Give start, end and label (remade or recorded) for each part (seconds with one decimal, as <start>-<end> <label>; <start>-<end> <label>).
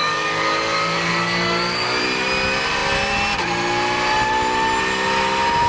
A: 0.0-2.0 remade; 2.0-5.7 recorded